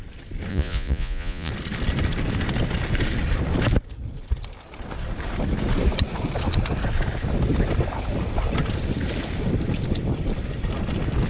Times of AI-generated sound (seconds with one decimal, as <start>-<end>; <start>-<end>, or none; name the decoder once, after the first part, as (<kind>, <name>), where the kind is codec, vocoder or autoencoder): 0.5-1.5 (vocoder, Vocos)